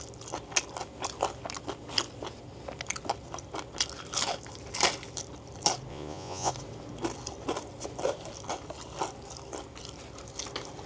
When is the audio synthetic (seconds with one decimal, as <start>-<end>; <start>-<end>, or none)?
5.9-6.5